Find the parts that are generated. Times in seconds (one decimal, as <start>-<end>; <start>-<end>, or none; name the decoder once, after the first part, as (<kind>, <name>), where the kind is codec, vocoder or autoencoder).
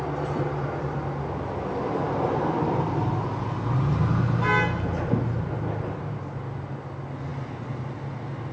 none